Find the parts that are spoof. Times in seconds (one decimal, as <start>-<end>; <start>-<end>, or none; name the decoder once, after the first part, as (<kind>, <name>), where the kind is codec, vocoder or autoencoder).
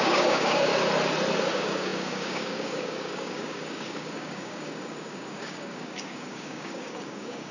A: 0.0-0.7 (codec, DAC); 1.5-7.5